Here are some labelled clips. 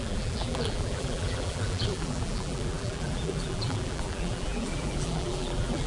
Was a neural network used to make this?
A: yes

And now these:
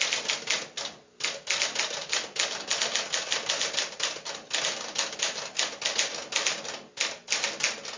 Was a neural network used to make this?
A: no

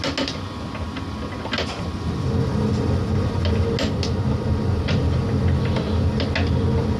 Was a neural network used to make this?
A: no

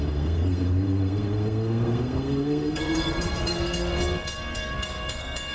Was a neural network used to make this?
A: yes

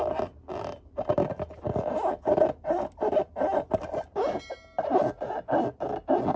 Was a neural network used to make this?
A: no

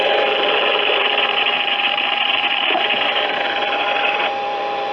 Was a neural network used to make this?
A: yes